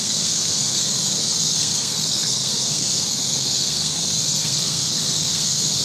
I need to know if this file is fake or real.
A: fake